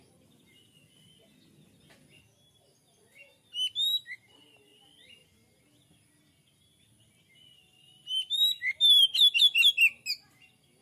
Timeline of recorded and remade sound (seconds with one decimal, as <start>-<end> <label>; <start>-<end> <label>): 0.0-10.8 recorded